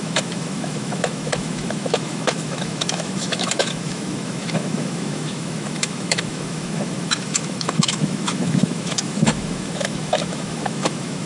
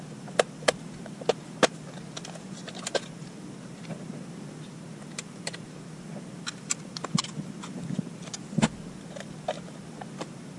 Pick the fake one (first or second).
first